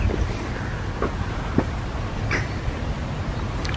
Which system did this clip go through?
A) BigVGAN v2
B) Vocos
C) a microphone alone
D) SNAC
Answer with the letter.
C